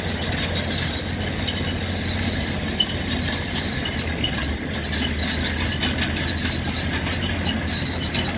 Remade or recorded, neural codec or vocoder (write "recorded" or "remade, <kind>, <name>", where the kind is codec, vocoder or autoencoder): recorded